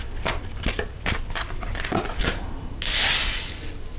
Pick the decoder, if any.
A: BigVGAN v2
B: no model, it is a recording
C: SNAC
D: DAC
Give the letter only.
B